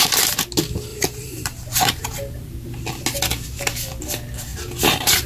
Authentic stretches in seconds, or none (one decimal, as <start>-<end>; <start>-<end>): 0.0-0.9; 2.5-4.5